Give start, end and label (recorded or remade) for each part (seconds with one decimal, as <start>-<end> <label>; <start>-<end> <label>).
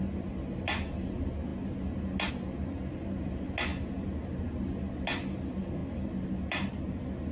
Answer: 0.0-7.3 recorded